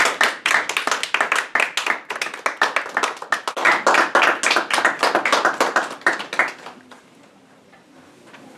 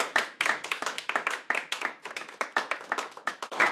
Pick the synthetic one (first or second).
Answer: second